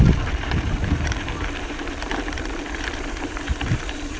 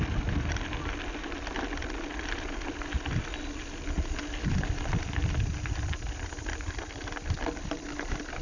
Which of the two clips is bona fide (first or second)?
second